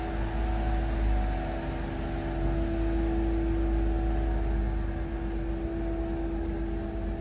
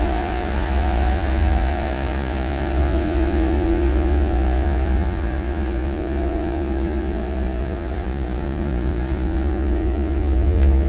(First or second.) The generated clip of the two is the second